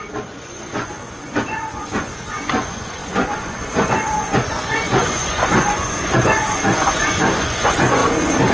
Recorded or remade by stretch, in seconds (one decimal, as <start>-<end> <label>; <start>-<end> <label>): 0.0-8.0 remade; 8.0-8.5 recorded

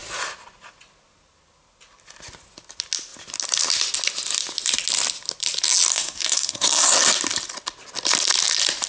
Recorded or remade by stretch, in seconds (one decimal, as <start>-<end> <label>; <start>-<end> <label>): 0.0-5.9 recorded; 5.9-6.7 remade; 6.7-8.9 recorded

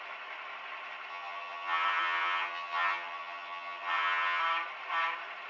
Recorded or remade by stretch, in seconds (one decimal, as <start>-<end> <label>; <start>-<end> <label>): 0.0-1.1 recorded; 1.1-4.4 remade; 4.4-5.5 recorded

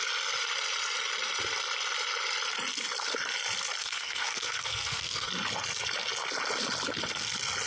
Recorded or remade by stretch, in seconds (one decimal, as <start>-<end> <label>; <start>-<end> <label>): 0.0-3.8 recorded; 3.8-5.3 remade; 5.3-7.7 recorded